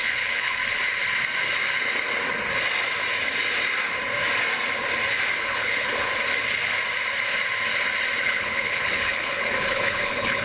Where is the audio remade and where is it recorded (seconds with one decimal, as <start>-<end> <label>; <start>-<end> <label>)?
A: 0.0-0.6 remade; 0.6-5.4 recorded; 5.4-6.1 remade; 6.1-8.2 recorded; 8.2-10.4 remade

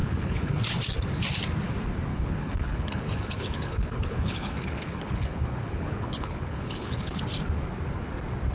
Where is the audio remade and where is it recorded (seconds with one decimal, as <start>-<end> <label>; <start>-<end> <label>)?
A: 0.0-0.6 remade; 0.6-2.1 recorded; 2.1-7.2 remade; 7.2-8.5 recorded

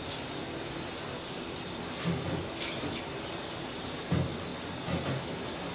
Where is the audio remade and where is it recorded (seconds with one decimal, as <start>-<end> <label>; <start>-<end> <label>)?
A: 0.0-5.7 recorded

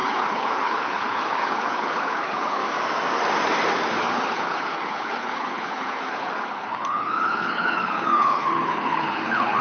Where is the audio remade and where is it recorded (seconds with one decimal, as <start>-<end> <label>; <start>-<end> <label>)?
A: 0.0-2.6 remade; 2.6-4.0 recorded; 4.0-9.6 remade